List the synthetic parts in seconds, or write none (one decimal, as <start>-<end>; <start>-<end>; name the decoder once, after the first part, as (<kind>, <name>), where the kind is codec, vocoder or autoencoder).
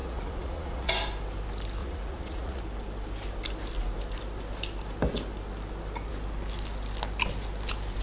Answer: 0.0-0.9 (vocoder, Vocos); 1.8-2.6